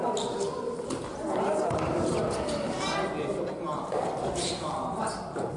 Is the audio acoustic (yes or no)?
yes